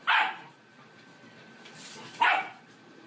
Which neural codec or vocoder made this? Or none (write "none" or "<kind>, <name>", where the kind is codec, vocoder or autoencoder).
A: vocoder, BigVGAN v2